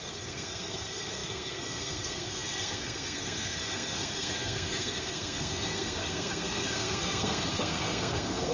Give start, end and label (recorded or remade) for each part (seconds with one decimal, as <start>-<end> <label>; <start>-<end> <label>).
0.0-8.5 remade

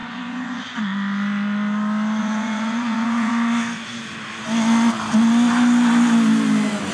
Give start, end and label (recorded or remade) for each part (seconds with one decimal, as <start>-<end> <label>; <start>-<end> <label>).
0.0-0.8 remade; 0.8-2.2 recorded; 2.2-3.3 remade; 3.3-6.9 recorded